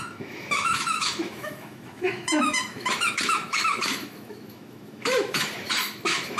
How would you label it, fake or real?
fake